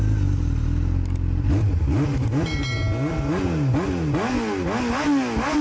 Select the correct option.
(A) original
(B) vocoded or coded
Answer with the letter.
A